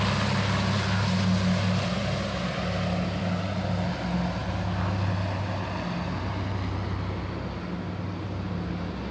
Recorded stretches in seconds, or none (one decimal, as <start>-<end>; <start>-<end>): 0.0-9.1